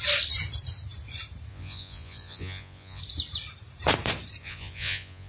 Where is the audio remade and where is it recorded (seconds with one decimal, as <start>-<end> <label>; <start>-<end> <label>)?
0.0-1.5 recorded; 1.5-3.0 remade; 3.0-4.4 recorded; 4.4-5.3 remade